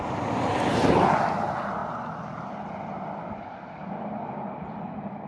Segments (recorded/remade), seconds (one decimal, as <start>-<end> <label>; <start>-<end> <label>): 0.0-5.3 recorded